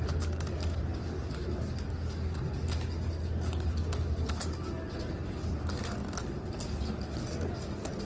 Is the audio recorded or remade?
recorded